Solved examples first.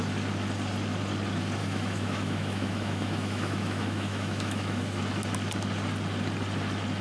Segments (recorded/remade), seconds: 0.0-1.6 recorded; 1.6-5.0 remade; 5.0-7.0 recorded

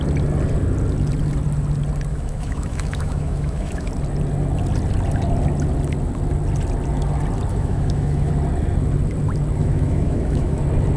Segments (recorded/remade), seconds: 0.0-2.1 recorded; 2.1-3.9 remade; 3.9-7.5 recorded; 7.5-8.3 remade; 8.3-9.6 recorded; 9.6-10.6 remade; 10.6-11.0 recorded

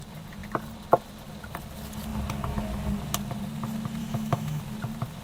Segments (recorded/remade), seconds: 0.0-4.0 recorded; 4.0-4.6 remade; 4.6-5.2 recorded